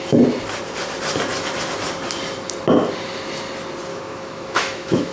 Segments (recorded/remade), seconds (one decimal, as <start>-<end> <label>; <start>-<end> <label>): 0.0-3.9 recorded; 3.9-5.1 remade